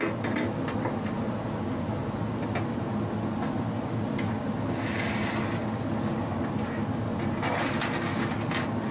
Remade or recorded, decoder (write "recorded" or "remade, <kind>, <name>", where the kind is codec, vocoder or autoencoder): recorded